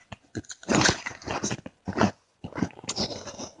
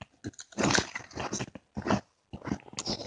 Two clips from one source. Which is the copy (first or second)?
first